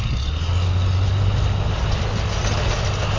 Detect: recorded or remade recorded